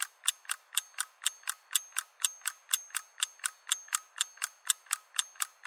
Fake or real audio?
real